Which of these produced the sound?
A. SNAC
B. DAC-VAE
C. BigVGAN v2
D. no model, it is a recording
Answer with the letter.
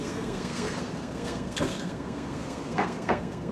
A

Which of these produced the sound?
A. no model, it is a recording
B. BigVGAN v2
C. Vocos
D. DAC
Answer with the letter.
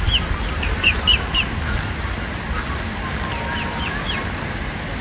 A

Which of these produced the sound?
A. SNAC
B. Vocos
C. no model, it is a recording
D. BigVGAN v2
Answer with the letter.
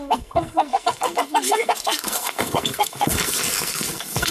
A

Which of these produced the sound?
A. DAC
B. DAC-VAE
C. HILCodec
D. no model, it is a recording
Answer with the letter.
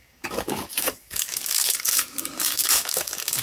A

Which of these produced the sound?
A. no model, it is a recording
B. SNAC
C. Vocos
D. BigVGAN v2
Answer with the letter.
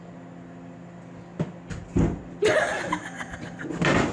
A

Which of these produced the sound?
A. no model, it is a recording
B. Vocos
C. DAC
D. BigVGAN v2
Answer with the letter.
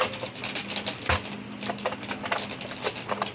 A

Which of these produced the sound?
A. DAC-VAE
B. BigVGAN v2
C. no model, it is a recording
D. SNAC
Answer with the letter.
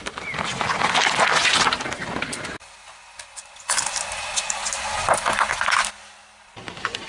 C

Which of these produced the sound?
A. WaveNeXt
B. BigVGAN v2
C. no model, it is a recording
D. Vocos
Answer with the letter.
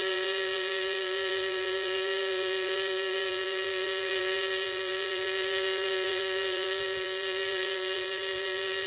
B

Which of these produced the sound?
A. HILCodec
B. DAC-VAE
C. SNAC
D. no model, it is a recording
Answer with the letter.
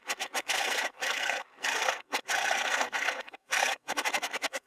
C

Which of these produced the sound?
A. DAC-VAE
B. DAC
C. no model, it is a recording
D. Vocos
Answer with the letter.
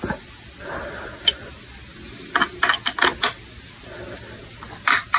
C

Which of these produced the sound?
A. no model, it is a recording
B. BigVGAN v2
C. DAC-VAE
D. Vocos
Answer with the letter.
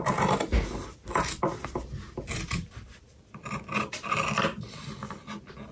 A